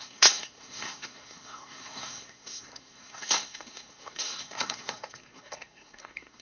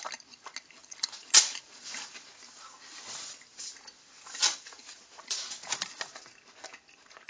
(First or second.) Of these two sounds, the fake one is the first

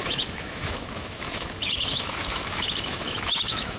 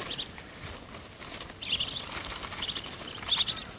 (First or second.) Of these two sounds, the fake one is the first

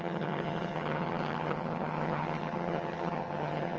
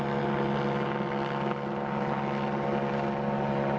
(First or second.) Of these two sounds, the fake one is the first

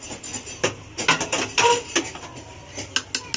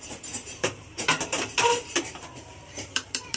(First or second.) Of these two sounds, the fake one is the second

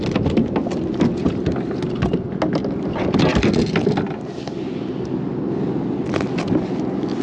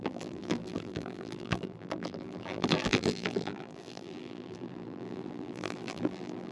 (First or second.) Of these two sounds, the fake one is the second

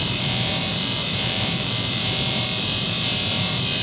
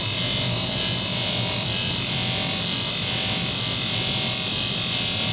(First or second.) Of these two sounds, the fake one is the first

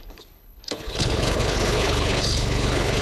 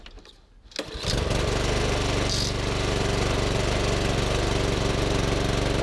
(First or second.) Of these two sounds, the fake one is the first